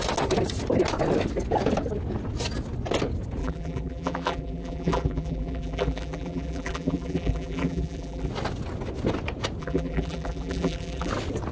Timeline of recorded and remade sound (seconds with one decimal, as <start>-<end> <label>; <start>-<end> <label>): 0.0-3.4 recorded; 3.4-8.3 remade; 8.3-9.6 recorded; 9.6-11.1 remade; 11.1-11.5 recorded